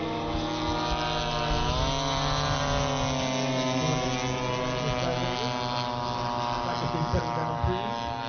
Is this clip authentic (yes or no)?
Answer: yes